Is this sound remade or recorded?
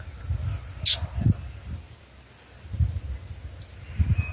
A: recorded